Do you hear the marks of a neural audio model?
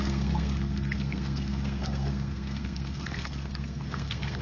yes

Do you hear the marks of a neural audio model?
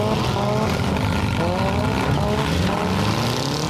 no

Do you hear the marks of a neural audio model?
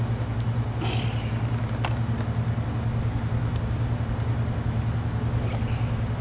no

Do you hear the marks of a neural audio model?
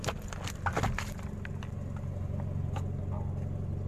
no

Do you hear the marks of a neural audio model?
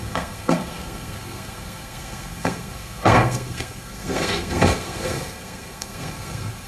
yes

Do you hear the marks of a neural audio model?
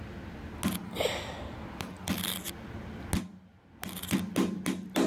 no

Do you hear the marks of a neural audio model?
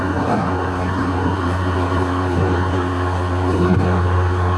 yes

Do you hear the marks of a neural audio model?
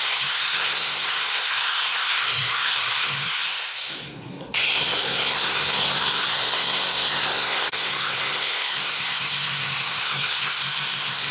yes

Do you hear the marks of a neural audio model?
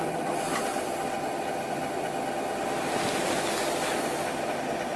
no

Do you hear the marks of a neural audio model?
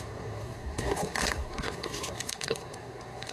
yes